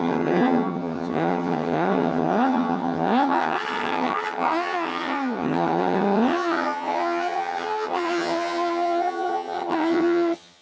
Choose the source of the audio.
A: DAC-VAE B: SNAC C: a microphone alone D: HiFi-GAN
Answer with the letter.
D